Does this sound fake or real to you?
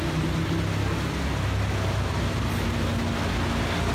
real